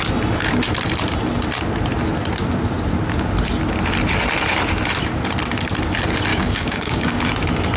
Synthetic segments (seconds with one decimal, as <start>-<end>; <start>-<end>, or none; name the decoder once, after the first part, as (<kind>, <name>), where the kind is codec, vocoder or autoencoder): 6.3-7.2 (codec, DAC)